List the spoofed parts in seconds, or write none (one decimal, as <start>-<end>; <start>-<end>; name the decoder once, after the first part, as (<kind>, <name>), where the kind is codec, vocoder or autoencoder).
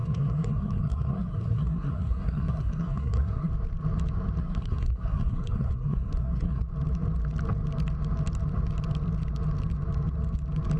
0.0-3.5 (codec, SNAC); 4.4-6.6